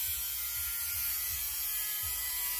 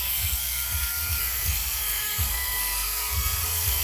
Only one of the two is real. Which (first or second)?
first